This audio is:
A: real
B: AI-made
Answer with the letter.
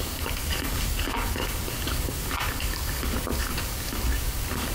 B